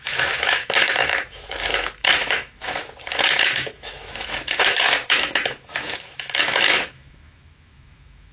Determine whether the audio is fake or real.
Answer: fake